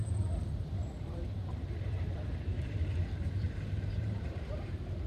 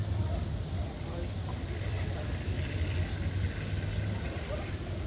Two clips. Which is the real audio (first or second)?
second